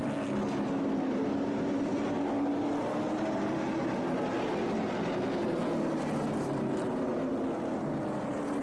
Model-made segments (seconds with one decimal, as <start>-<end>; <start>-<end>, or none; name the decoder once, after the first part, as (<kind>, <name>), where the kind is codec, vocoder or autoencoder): none